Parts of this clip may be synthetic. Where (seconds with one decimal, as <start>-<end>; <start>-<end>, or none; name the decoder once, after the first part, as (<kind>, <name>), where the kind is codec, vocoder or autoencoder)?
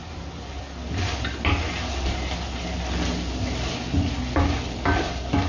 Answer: none